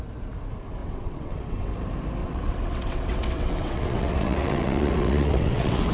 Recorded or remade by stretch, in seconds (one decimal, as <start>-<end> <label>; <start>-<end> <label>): 0.0-0.8 recorded; 0.8-1.7 remade; 1.7-2.2 recorded; 2.2-5.9 remade